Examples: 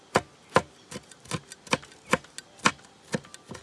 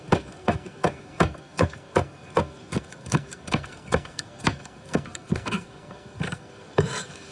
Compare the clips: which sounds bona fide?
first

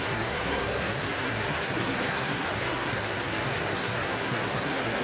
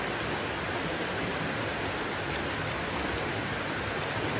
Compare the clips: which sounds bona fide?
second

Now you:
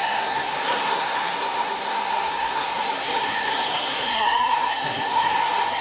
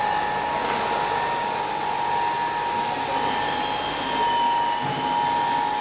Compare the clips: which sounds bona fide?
second